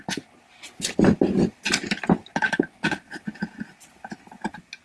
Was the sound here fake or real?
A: real